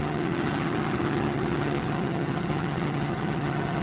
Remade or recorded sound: remade